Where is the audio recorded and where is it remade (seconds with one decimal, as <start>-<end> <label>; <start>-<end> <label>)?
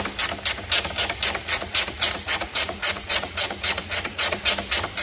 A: 0.0-1.4 recorded; 1.4-4.4 remade; 4.4-5.0 recorded